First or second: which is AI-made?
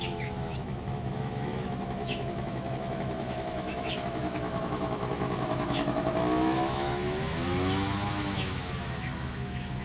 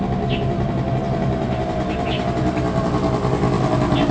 first